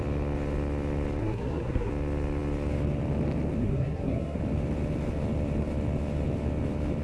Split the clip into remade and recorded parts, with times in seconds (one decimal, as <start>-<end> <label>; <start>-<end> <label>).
0.0-1.2 recorded; 1.2-1.9 remade; 1.9-3.6 recorded; 3.6-4.4 remade; 4.4-7.0 recorded